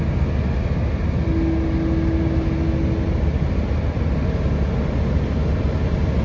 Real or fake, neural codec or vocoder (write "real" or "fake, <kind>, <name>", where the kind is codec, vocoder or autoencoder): real